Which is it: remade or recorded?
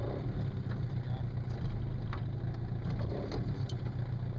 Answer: recorded